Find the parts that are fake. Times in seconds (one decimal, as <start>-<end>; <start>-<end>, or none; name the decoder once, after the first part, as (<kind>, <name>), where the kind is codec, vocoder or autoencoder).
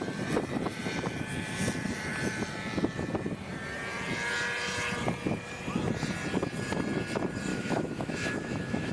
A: 7.5-8.9 (autoencoder, DAC-VAE)